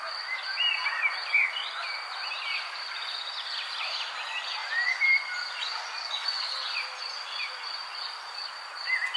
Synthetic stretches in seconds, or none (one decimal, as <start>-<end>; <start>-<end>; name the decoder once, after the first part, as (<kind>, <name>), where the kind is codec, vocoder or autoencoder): none